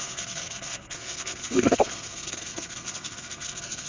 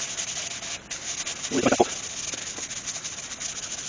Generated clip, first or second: first